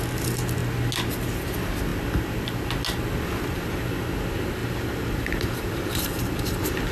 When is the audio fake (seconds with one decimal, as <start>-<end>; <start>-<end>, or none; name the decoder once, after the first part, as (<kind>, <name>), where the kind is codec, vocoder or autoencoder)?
4.6-6.9 (vocoder, BigVGAN v2)